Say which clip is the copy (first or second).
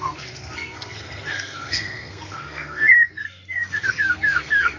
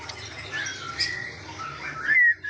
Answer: first